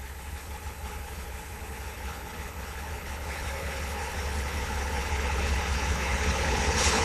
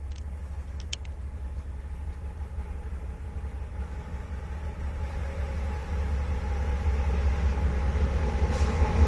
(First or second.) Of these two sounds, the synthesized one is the first